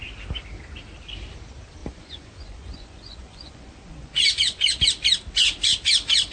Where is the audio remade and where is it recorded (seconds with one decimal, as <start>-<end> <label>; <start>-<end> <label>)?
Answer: 0.0-1.8 recorded; 1.8-4.8 remade; 4.8-6.3 recorded